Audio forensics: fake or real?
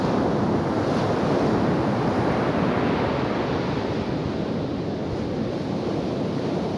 real